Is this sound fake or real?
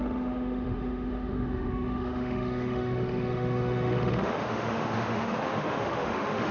fake